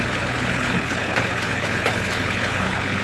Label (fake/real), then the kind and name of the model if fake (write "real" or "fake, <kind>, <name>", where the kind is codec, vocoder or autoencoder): fake, codec, HILCodec